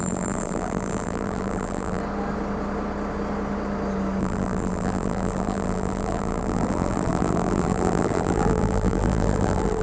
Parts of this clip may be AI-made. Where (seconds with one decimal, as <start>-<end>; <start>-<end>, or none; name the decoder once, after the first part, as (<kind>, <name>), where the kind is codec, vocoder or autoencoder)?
0.0-2.0 (vocoder, BigVGAN v2); 4.2-9.8